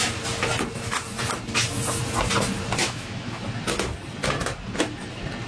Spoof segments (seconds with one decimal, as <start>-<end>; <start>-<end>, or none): 2.8-3.4